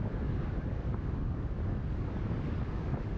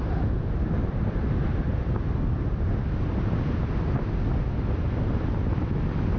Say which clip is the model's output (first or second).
first